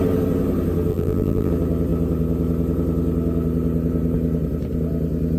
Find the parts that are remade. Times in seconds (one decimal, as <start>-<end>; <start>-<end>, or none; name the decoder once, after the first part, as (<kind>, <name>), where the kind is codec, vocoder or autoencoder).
0.9-1.5 (vocoder, BigVGAN v2)